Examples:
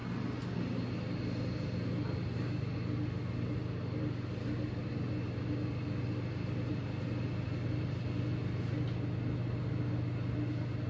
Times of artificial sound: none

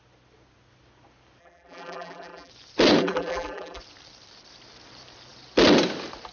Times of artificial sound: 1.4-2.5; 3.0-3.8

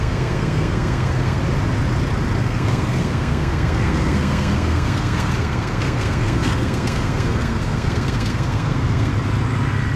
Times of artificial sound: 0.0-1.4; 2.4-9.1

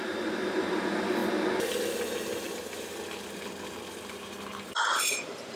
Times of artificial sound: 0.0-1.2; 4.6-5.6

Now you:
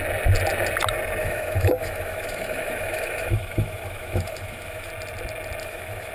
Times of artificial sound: 1.2-4.9; 5.6-6.1

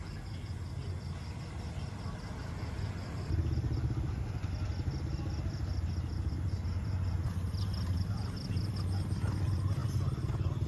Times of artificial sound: none

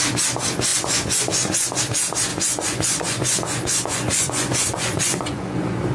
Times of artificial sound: 0.7-1.8; 2.3-5.9

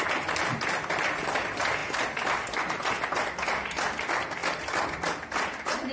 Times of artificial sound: none